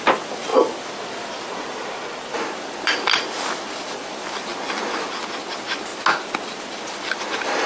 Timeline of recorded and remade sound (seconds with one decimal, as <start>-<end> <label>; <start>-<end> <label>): 0.0-4.5 remade; 4.5-5.4 recorded; 5.4-5.9 remade; 5.9-6.6 recorded; 6.6-7.7 remade

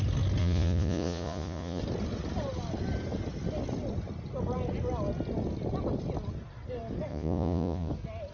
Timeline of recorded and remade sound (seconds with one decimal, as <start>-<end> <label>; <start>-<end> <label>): 0.0-0.4 recorded; 0.4-1.8 remade; 1.8-7.1 recorded; 7.1-7.9 remade; 7.9-8.3 recorded

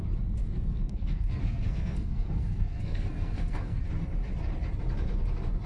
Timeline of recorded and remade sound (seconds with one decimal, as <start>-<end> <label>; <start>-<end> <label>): 0.0-0.4 recorded; 0.4-3.8 remade; 3.8-5.7 recorded

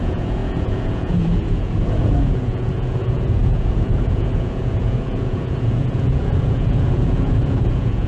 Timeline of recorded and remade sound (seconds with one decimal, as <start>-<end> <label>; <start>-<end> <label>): 0.0-8.1 remade

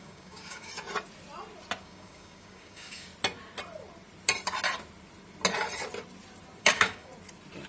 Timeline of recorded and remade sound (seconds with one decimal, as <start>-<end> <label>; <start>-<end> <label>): 0.0-0.7 remade; 0.7-1.8 recorded; 1.8-3.1 remade; 3.1-6.6 recorded; 6.6-7.1 remade; 7.1-7.7 recorded

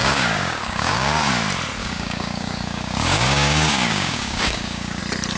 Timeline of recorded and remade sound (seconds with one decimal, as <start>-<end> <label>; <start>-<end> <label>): 0.0-1.3 remade; 1.3-1.8 recorded; 1.8-5.0 remade; 5.0-5.4 recorded